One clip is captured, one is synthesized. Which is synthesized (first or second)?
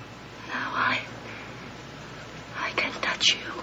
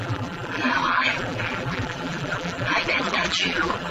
second